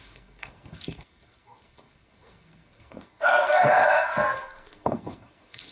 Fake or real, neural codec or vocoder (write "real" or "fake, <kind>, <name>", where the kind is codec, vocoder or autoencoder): fake, codec, SNAC